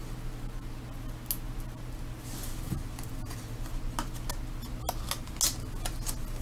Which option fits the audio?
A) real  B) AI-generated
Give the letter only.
A